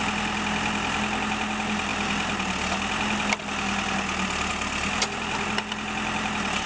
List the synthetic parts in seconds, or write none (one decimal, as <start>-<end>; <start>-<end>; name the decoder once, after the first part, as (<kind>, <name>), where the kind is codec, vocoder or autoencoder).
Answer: none